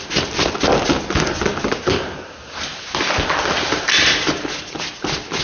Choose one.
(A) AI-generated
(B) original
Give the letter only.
B